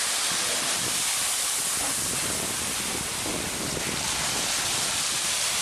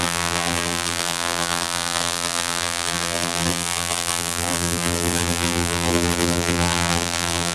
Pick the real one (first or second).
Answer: first